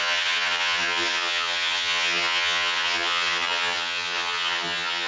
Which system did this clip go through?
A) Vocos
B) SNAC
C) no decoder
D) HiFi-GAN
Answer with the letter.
D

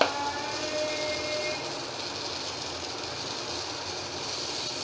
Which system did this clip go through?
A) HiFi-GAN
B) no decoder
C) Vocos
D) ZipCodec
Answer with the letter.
B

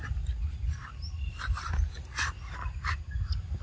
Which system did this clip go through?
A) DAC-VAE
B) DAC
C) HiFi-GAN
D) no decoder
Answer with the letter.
D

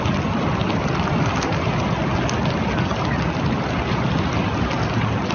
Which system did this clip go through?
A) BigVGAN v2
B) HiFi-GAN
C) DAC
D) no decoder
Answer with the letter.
D